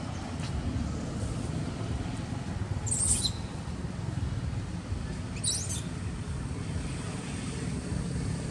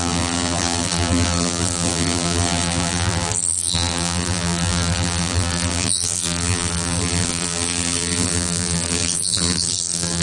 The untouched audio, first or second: first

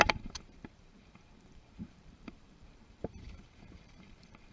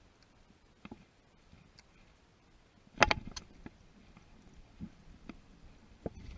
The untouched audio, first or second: second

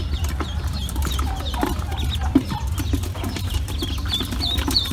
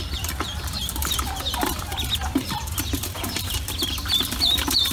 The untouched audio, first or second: first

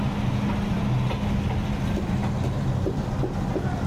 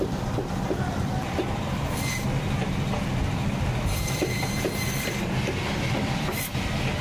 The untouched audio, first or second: first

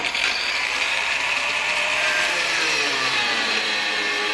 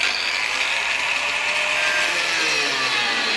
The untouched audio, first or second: second